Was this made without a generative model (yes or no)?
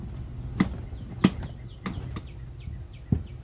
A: yes